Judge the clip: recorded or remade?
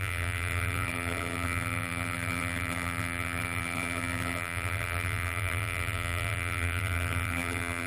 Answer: remade